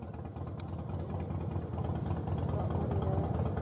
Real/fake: real